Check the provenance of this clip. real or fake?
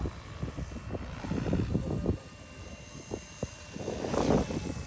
real